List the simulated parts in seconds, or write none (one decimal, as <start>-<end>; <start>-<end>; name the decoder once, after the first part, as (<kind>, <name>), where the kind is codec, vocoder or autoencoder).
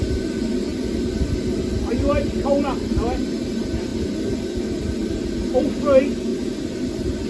none